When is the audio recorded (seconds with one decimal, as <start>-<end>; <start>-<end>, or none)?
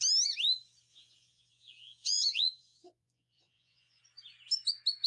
0.0-0.9; 4.0-5.1